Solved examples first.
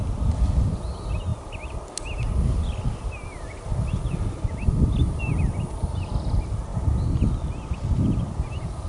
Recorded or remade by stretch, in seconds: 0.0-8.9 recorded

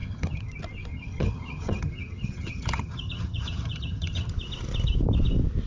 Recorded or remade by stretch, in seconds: 0.0-0.5 remade; 0.5-0.9 recorded; 0.9-4.3 remade; 4.3-5.7 recorded

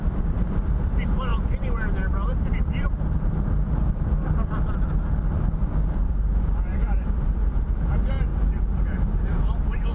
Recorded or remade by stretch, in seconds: 0.0-9.9 recorded

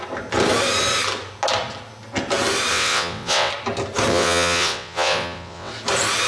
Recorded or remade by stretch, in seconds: 0.0-2.7 recorded; 2.7-3.5 remade; 3.5-4.1 recorded; 4.1-5.7 remade; 5.7-6.3 recorded

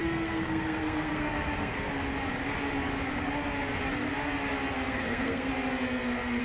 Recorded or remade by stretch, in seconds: 0.0-1.9 remade; 1.9-4.7 recorded; 4.7-5.5 remade; 5.5-6.4 recorded